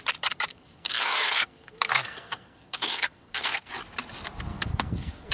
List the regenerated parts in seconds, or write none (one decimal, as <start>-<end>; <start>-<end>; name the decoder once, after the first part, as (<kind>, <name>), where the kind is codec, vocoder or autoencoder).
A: 0.5-3.7 (codec, SNAC); 4.5-5.3